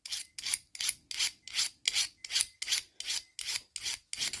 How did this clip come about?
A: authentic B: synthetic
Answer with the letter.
A